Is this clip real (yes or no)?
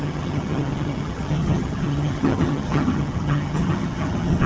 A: no